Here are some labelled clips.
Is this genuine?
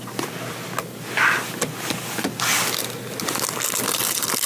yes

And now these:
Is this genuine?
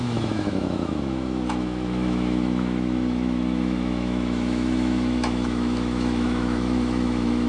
no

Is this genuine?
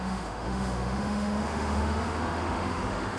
no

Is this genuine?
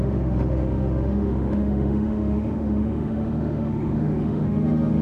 no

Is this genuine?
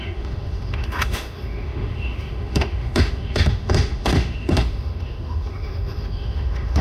no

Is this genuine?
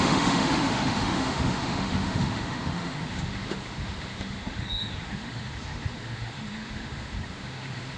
no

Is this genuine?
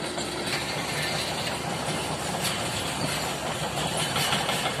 yes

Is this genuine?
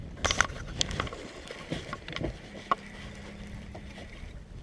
yes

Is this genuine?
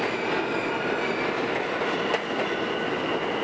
yes